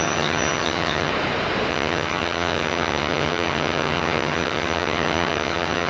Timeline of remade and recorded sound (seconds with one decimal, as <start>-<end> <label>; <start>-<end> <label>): 0.0-1.1 remade; 1.1-1.7 recorded; 1.7-5.9 remade